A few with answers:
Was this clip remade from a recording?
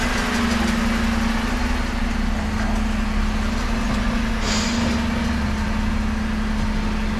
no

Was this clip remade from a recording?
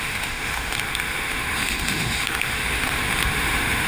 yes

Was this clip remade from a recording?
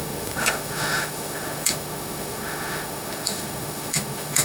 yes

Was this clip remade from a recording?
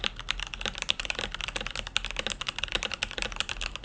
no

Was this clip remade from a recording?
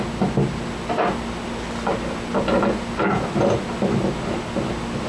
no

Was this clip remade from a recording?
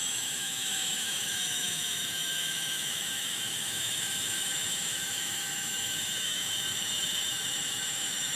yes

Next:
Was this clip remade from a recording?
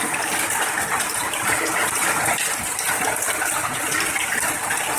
no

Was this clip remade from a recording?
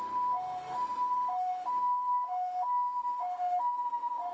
yes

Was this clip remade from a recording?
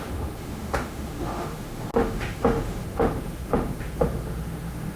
yes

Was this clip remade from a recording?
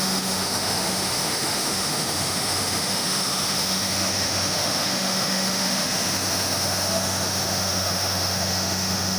yes